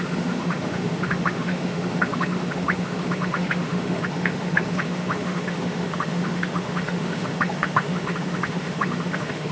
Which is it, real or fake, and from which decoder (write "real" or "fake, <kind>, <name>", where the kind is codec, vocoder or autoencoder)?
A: fake, autoencoder, DAC-VAE